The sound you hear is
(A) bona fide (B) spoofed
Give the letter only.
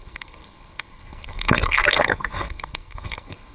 B